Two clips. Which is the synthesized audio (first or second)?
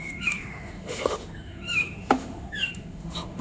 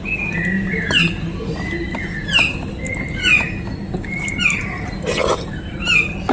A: first